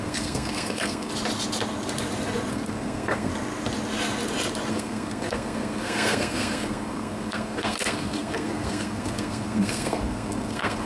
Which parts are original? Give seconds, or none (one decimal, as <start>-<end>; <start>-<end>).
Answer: 1.1-2.5; 3.3-4.7